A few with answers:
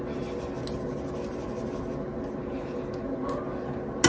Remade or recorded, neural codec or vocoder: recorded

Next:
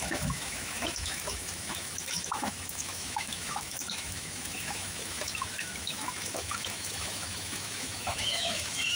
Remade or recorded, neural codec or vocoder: remade, autoencoder, DAC-VAE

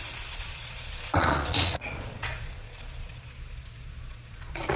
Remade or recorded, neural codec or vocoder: remade, vocoder, Vocos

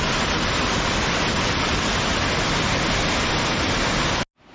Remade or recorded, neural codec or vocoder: recorded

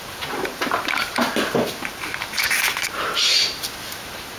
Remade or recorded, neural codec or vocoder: remade, vocoder, BigVGAN v2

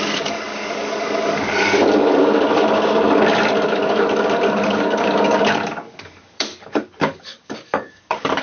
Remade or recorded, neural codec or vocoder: remade, codec, DAC